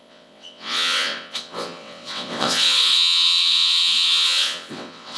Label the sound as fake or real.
fake